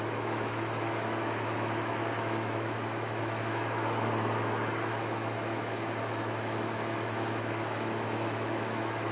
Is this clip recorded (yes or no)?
no